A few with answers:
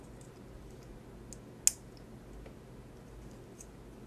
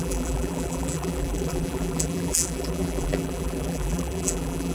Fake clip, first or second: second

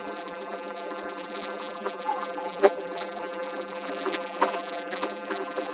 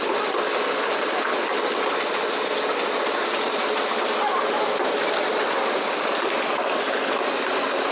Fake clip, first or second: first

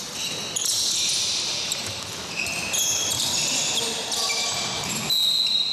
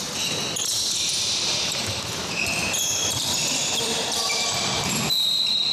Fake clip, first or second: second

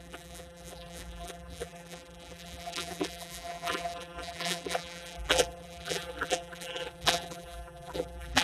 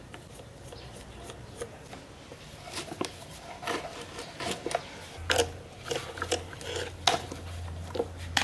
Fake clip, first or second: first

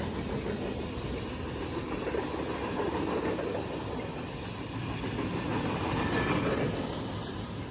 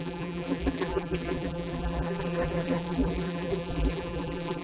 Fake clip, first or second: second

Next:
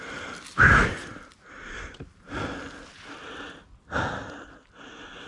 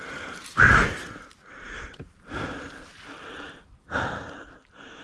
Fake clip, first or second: second